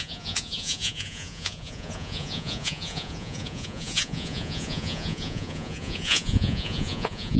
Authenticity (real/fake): fake